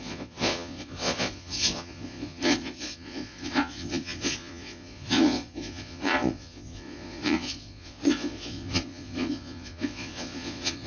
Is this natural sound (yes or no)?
no